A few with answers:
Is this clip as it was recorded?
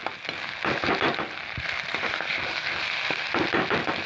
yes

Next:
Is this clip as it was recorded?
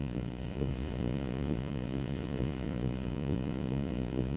no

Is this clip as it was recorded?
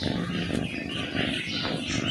yes